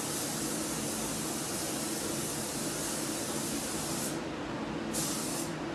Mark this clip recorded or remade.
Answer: recorded